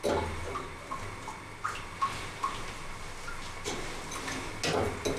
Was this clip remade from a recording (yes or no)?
no